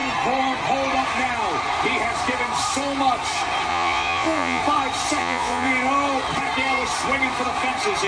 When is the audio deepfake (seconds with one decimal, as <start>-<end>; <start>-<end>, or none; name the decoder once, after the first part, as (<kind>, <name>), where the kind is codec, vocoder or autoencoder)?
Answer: 3.7-4.6 (vocoder, Vocos); 5.2-5.7

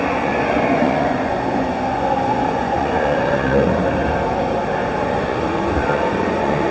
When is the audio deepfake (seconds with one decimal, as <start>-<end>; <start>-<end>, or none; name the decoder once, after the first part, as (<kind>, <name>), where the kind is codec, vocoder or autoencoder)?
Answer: 0.0-3.8 (vocoder, Vocos); 5.0-6.7